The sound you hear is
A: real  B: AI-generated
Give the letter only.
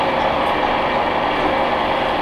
A